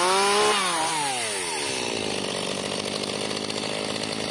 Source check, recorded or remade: recorded